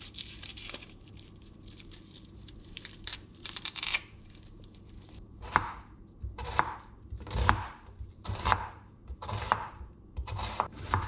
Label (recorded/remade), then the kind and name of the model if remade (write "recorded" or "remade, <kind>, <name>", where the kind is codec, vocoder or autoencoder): remade, vocoder, BigVGAN v2